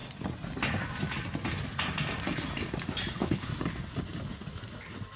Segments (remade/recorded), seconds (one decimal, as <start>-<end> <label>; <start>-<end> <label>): 0.0-3.1 recorded; 3.1-3.5 remade; 3.5-5.2 recorded